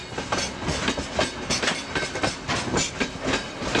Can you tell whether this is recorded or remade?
recorded